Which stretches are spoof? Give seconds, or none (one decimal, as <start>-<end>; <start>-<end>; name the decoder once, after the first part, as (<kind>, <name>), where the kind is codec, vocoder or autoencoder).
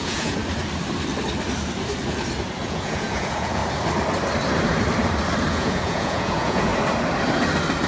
0.0-0.4 (vocoder, Vocos); 2.6-3.6; 5.5-6.7